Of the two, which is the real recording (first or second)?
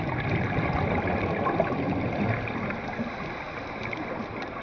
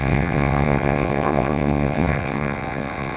first